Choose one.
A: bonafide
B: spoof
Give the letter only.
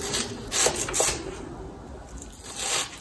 A